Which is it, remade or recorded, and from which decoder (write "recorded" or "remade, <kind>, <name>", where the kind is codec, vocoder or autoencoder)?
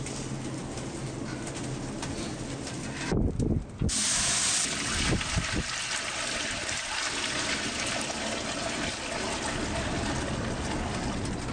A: recorded